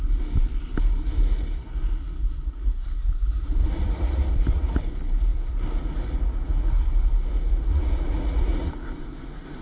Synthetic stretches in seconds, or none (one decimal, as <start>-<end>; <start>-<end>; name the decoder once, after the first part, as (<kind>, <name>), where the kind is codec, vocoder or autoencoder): 3.6-4.8 (vocoder, Vocos); 7.7-8.7